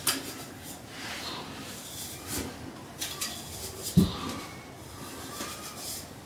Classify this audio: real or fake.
real